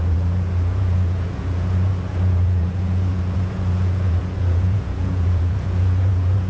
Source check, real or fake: fake